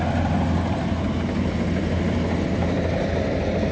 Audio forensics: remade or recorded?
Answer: recorded